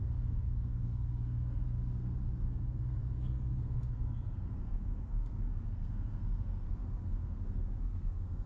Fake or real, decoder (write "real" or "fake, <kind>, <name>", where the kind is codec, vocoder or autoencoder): fake, codec, SNAC